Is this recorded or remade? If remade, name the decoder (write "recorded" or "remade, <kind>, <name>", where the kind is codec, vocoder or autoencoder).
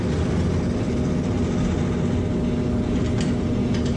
recorded